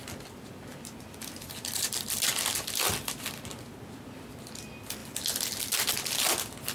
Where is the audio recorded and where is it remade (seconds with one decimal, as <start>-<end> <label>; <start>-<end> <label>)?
0.0-4.0 remade; 4.0-6.7 recorded